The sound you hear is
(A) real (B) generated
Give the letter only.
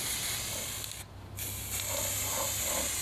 A